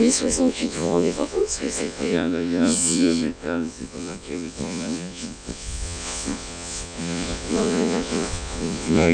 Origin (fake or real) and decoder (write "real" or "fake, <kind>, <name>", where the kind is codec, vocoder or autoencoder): fake, vocoder, Vocos